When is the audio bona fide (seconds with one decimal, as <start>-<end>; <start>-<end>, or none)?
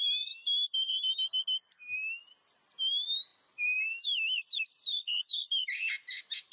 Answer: 1.1-2.9